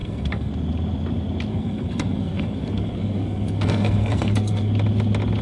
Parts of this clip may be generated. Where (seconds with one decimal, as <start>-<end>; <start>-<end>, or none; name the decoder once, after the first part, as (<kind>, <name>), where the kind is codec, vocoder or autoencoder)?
0.0-0.5 (codec, SNAC); 1.5-4.7